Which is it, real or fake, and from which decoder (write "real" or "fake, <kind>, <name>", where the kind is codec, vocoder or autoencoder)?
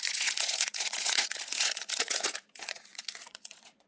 fake, vocoder, Vocos